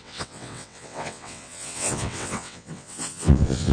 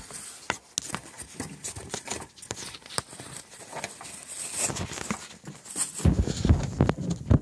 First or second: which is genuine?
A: second